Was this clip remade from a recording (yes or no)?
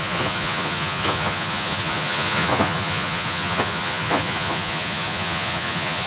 yes